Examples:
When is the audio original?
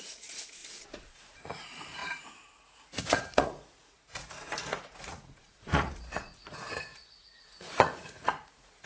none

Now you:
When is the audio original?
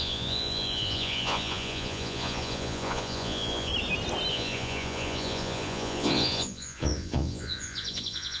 3.7-4.3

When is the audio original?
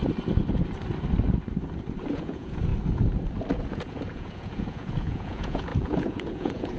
0.0-2.1; 2.7-3.7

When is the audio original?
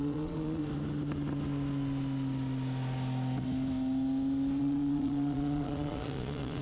0.6-4.6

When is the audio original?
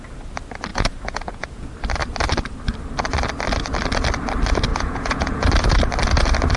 0.0-0.7; 1.6-4.7; 5.5-6.6